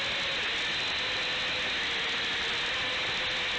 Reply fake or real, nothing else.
real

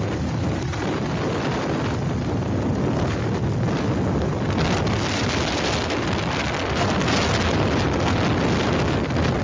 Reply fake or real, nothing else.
real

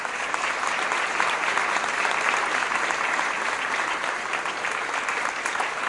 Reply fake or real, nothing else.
real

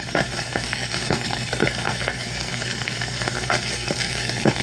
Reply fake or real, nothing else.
fake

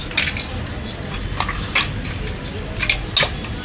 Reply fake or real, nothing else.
real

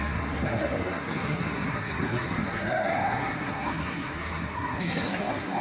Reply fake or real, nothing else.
fake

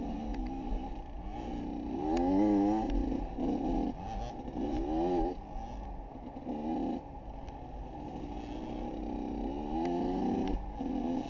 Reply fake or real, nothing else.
real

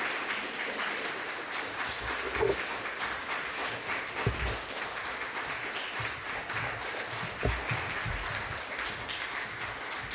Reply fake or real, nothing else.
real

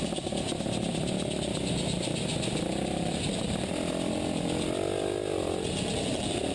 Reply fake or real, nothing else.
real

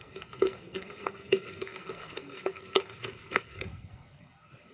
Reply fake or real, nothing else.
fake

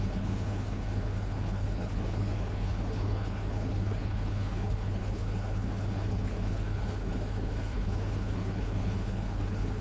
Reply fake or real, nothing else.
fake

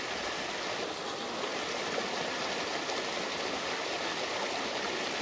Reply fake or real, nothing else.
real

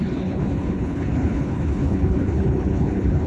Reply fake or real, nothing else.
fake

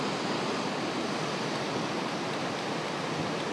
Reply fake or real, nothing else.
real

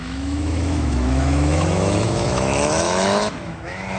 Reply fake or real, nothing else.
fake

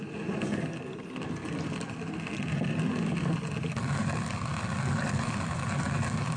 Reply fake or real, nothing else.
real